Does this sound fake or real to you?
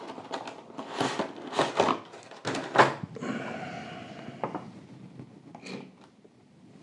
real